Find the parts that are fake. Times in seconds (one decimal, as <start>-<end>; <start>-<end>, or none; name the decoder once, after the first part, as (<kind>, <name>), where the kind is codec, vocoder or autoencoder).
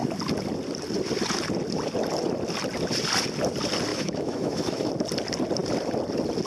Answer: 3.9-4.9 (autoencoder, DAC-VAE)